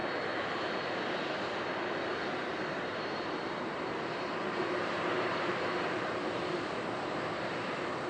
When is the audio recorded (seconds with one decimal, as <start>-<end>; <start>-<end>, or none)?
0.0-2.7